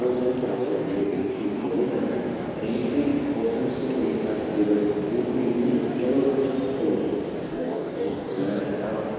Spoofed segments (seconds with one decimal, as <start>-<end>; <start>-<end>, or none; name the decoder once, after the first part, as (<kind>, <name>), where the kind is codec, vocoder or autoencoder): 0.5-1.7 (codec, DAC); 7.5-8.6